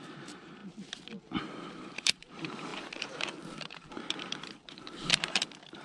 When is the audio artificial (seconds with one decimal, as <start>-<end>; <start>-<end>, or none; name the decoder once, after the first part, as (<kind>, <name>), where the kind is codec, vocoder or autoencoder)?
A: 0.0-0.6 (vocoder, BigVGAN v2); 1.8-5.8